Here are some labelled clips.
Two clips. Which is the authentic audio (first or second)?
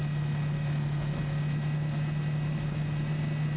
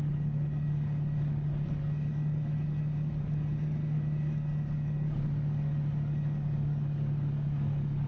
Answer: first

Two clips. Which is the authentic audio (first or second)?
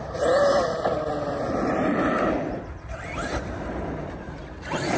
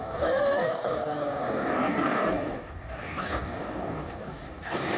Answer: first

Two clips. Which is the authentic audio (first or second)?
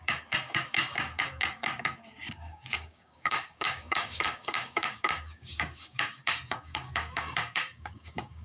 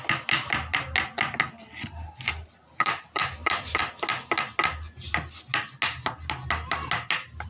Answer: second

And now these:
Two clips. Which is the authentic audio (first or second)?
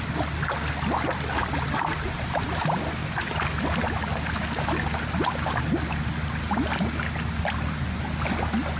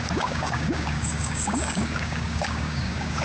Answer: first